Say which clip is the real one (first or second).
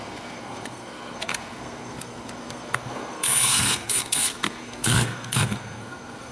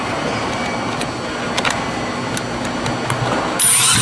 second